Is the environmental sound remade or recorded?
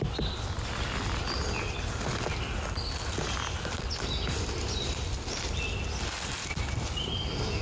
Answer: recorded